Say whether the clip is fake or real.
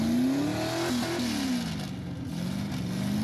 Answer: real